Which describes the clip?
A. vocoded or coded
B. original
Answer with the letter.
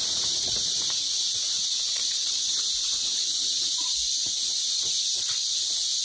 A